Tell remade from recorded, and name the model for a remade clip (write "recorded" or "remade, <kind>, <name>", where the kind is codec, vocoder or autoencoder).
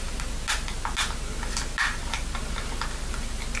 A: recorded